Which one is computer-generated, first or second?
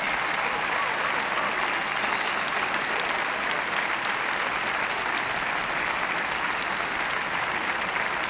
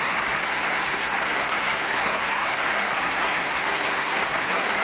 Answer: second